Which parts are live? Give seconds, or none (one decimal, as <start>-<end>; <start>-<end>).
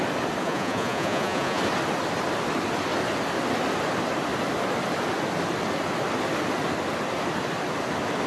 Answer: 0.0-0.4; 1.6-8.3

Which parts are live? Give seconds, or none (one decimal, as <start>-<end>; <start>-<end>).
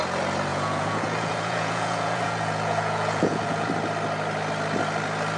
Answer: 0.0-0.5; 3.7-5.4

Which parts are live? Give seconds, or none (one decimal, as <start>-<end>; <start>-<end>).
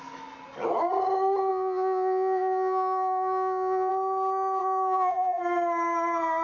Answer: 0.0-1.5; 3.9-4.6; 5.4-6.4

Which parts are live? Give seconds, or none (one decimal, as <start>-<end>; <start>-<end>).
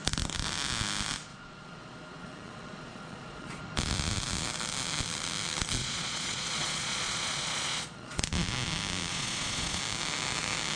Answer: 0.0-1.3; 3.6-5.8; 8.2-9.1; 9.8-10.8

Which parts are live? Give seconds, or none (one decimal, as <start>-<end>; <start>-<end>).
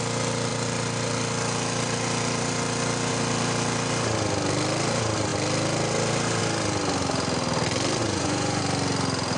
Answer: 0.0-8.0; 8.6-9.4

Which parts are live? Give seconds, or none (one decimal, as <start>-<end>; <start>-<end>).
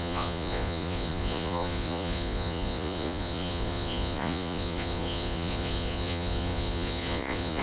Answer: none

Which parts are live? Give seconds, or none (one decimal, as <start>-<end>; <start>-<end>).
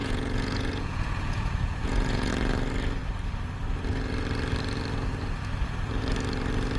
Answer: 2.3-6.8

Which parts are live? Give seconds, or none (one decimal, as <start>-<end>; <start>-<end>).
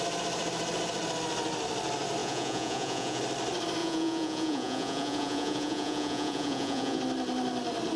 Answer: 0.0-2.2; 3.2-3.8; 7.0-8.0